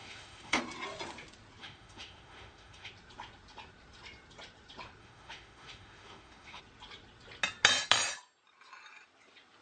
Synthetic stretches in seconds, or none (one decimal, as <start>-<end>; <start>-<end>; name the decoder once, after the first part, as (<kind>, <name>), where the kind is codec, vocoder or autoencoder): 0.0-0.6 (autoencoder, DAC-VAE); 1.6-2.9; 5.0-6.6